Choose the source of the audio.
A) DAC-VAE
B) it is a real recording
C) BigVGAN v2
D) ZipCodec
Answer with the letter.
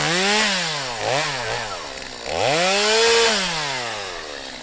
B